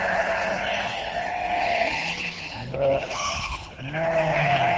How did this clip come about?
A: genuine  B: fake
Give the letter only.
B